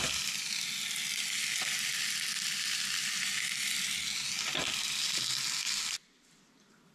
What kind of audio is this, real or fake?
real